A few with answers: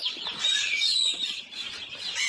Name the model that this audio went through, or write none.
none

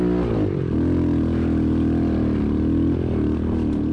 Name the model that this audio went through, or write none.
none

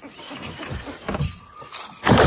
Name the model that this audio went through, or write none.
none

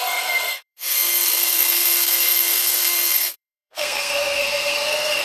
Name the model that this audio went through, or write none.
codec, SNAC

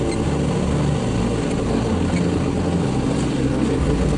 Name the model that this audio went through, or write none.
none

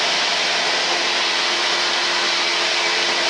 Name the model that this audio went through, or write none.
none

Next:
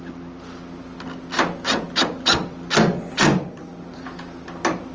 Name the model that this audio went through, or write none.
none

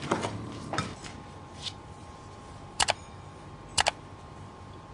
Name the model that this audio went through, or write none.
vocoder, BigVGAN v2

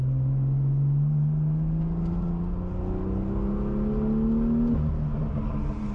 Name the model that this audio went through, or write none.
none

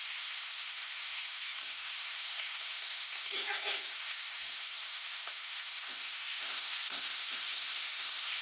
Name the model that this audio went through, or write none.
codec, SNAC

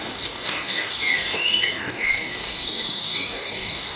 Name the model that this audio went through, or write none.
codec, DAC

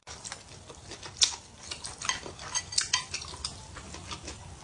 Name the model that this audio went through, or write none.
none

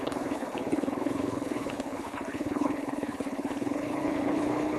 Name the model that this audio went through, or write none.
codec, HILCodec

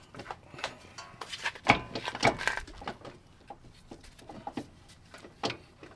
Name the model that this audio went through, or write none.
none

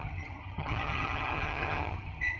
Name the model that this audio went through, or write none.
vocoder, HiFi-GAN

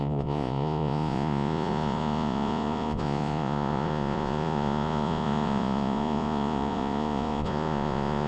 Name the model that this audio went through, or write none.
vocoder, Vocos